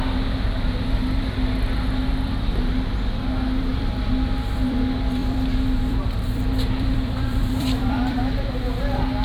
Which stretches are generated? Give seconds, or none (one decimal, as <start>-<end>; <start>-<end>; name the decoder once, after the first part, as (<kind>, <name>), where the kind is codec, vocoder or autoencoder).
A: 3.7-4.8 (vocoder, BigVGAN v2); 5.2-8.2